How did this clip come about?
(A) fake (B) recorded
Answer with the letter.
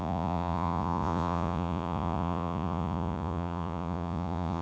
A